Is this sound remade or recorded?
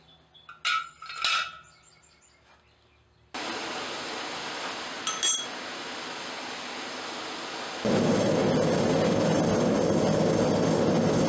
recorded